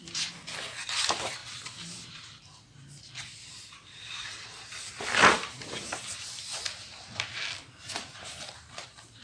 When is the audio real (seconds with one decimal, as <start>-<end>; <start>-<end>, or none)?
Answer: 1.4-2.1